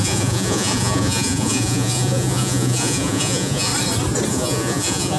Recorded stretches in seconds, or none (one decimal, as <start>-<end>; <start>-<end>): 3.7-4.3